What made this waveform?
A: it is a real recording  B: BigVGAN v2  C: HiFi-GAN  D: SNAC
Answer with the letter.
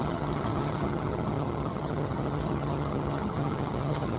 C